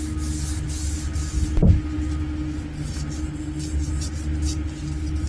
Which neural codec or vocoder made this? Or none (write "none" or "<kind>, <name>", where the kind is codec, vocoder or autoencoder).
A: none